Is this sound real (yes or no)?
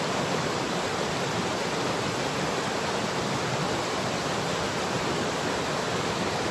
yes